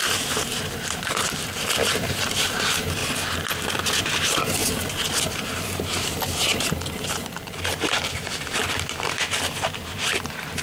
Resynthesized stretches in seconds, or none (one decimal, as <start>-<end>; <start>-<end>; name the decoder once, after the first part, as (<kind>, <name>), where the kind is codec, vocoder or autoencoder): 0.0-3.0 (vocoder, BigVGAN v2); 4.0-4.6; 5.2-10.6

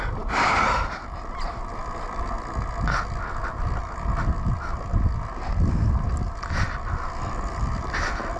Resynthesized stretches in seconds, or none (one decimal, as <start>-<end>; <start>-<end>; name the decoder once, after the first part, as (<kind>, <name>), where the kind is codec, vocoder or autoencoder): none